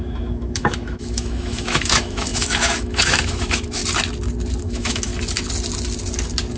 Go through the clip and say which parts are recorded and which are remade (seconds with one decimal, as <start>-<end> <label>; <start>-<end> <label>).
0.0-3.8 remade; 3.8-4.6 recorded; 4.6-5.1 remade; 5.1-6.6 recorded

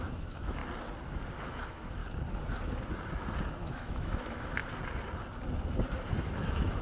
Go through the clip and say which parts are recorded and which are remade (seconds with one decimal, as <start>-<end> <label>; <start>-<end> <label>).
0.0-0.6 remade; 0.6-1.4 recorded; 1.4-2.0 remade; 2.0-3.4 recorded; 3.4-4.6 remade; 4.6-6.1 recorded; 6.1-6.8 remade